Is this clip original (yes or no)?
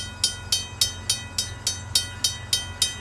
yes